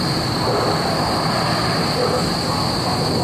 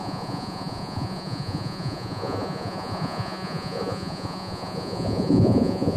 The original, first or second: first